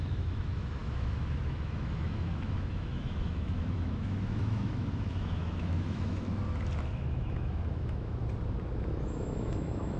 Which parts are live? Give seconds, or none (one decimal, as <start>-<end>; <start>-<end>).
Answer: 6.3-6.9; 8.2-8.9